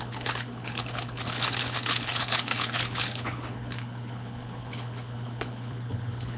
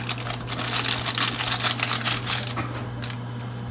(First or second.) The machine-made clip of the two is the first